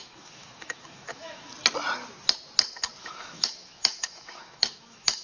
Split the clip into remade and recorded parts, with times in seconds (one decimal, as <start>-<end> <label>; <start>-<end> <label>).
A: 0.0-1.5 remade; 1.5-3.0 recorded; 3.0-5.2 remade